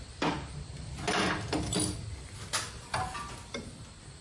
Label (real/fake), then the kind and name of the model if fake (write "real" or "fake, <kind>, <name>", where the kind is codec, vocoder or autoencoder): real